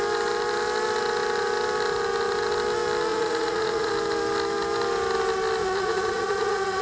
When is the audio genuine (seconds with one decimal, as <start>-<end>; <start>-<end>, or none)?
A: 0.0-3.1; 3.9-5.6